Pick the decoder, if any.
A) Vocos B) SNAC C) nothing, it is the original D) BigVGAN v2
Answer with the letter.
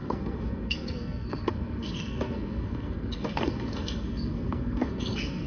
B